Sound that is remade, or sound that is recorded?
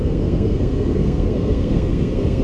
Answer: remade